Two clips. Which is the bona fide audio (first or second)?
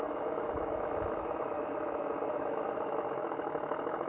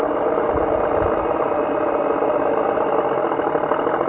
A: second